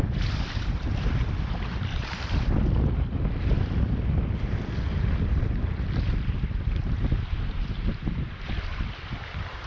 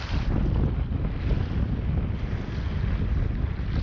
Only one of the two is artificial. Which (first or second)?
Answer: first